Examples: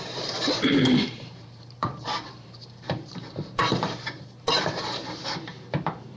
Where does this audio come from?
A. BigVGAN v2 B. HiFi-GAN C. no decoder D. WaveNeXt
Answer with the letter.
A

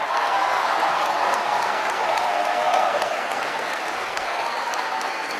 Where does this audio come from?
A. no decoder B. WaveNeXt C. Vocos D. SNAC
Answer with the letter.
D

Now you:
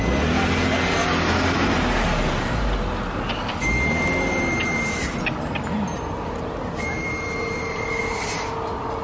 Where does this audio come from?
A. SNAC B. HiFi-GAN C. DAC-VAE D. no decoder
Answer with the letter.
D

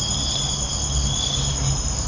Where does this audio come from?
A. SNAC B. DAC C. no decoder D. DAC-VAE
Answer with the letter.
C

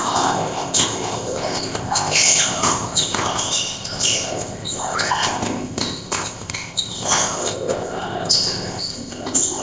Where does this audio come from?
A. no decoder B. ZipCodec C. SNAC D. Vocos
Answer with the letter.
B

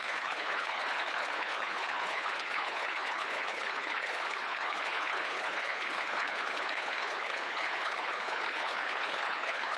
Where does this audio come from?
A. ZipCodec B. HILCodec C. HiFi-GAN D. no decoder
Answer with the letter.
B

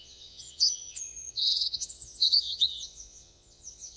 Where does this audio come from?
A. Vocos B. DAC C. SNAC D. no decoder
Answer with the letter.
A